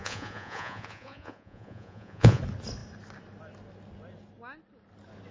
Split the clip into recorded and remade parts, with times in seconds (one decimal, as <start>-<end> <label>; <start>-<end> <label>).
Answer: 0.0-2.4 remade; 2.4-5.3 recorded